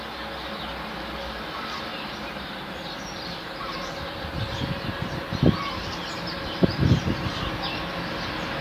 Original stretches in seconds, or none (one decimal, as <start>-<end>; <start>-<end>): 0.0-1.9; 4.5-5.8; 7.3-8.6